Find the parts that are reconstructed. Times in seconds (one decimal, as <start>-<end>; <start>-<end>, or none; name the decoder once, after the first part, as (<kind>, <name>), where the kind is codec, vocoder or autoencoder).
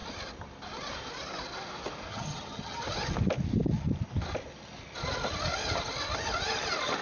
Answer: 2.1-2.8 (vocoder, HiFi-GAN)